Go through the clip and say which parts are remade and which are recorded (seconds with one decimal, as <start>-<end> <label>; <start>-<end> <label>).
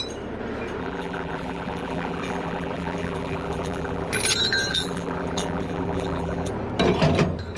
0.0-0.8 recorded; 0.8-4.1 remade; 4.1-4.7 recorded; 4.7-6.5 remade; 6.5-7.6 recorded